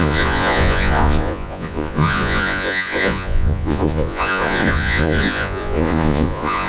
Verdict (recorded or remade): remade